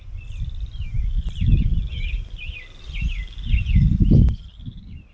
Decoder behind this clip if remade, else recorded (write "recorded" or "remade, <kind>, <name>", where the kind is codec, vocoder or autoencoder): recorded